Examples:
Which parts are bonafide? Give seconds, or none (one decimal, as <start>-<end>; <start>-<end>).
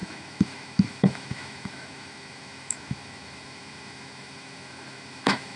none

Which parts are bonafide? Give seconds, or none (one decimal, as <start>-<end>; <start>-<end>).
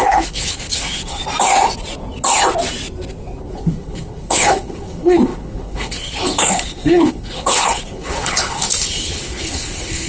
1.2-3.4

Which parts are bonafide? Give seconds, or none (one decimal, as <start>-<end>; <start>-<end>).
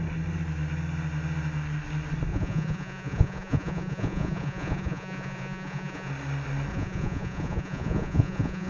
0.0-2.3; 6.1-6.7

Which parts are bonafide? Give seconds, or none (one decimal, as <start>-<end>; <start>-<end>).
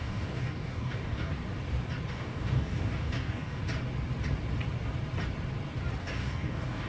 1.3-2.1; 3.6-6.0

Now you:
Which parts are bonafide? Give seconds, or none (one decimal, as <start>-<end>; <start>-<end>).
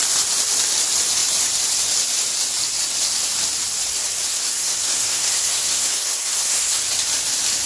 0.0-4.3; 6.8-7.7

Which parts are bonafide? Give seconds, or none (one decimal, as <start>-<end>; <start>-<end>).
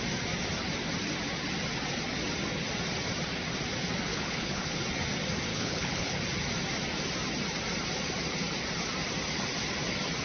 0.0-4.1; 4.8-5.5; 6.2-10.2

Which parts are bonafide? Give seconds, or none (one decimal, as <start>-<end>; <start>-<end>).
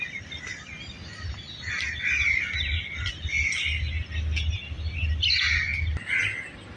0.0-6.8